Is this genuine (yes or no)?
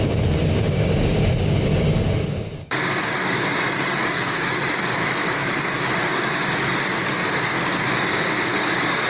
no